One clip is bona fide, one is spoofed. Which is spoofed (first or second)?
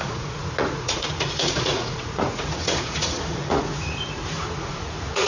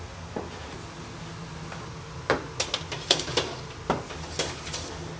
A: first